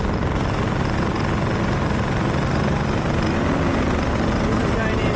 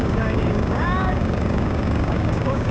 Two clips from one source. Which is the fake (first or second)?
second